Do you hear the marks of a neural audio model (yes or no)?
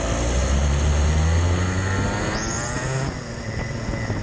no